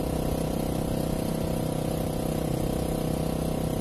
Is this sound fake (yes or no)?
no